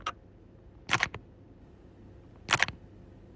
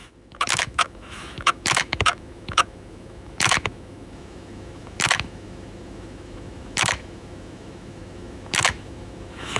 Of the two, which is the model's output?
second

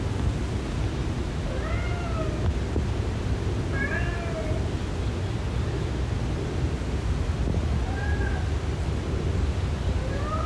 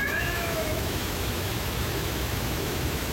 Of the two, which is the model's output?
second